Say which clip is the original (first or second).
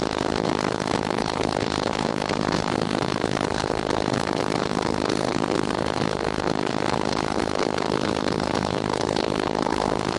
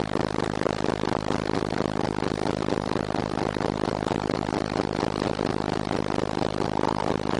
second